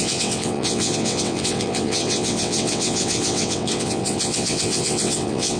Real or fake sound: fake